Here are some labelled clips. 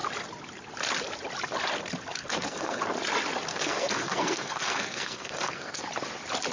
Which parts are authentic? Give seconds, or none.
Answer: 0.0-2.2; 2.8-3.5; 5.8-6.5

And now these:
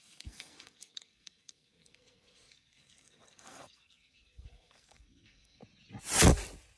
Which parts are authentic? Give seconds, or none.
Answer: 5.6-6.8

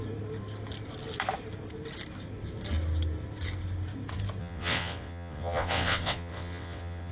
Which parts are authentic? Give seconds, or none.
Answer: 0.0-4.4

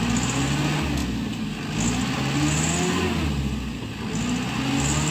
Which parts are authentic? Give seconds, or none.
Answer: 0.0-5.1

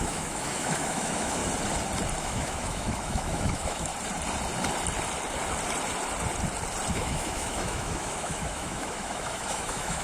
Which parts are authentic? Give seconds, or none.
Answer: 1.4-2.2; 3.9-6.9